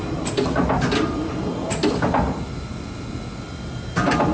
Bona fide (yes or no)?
yes